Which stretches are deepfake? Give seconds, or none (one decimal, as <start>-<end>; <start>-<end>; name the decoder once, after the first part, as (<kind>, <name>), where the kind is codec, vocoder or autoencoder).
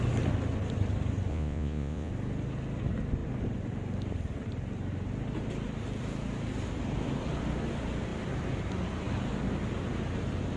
1.3-2.1 (vocoder, Vocos)